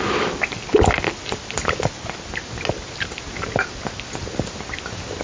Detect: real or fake real